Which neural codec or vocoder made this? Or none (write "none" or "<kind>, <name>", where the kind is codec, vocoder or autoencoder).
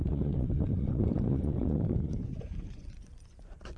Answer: vocoder, Vocos